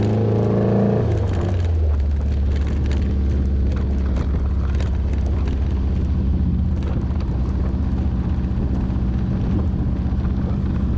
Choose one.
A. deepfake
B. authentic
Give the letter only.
B